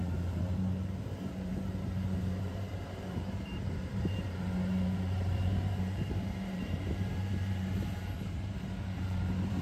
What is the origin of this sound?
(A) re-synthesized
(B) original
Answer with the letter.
A